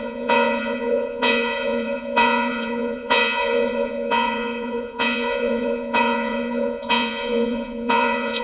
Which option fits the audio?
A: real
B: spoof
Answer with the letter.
B